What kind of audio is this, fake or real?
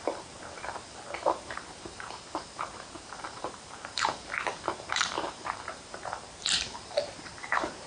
fake